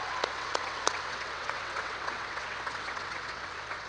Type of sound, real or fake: fake